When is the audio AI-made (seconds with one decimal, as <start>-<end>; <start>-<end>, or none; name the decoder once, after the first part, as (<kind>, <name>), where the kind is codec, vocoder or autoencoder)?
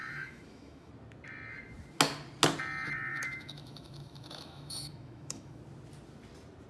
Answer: 0.0-0.9 (autoencoder, DAC-VAE); 3.1-5.6